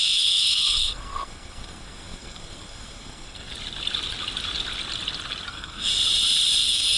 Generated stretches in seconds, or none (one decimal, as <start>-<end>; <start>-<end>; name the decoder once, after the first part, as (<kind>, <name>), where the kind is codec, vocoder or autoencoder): 0.0-3.5 (codec, SNAC); 5.5-5.9; 6.6-7.0